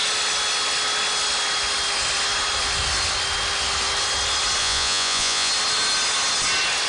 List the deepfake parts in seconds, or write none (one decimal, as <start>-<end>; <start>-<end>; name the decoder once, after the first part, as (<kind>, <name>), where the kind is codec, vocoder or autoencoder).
4.6-5.5 (vocoder, Vocos)

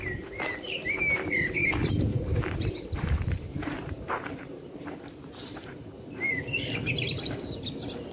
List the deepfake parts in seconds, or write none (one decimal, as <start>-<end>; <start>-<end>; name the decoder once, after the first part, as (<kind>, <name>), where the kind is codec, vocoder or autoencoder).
2.1-6.9 (vocoder, BigVGAN v2)

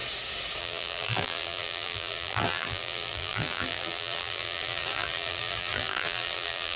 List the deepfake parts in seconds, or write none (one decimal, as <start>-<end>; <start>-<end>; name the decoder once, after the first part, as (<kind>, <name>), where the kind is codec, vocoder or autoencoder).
0.6-6.8 (vocoder, BigVGAN v2)